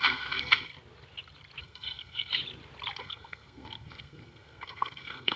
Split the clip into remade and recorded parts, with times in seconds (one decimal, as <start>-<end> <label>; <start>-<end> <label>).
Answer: 0.0-0.7 remade; 0.7-1.6 recorded; 1.6-2.3 remade; 2.3-3.0 recorded; 3.0-5.4 remade